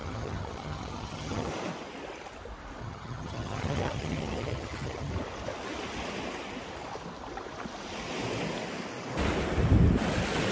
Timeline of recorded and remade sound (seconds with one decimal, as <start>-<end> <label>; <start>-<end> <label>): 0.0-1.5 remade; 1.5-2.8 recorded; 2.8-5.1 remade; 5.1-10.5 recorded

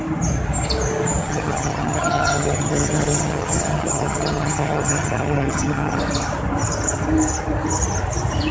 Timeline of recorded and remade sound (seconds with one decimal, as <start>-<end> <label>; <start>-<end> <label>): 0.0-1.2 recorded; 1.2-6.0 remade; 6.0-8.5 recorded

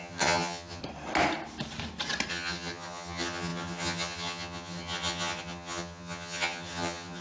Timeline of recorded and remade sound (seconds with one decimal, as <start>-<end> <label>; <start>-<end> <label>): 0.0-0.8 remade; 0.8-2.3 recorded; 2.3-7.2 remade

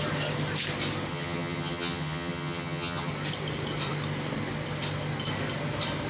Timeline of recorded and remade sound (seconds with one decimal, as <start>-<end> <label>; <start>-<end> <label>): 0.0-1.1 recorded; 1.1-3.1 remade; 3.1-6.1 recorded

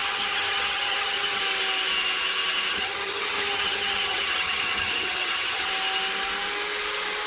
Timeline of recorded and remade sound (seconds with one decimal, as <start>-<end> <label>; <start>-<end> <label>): 0.0-1.4 remade; 1.4-2.7 recorded; 2.7-5.7 remade; 5.7-7.3 recorded